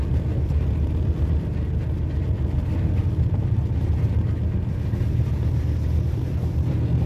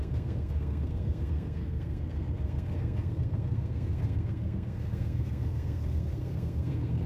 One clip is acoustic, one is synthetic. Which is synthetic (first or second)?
second